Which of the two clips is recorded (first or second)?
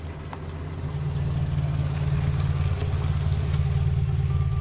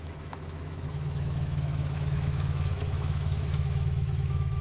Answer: first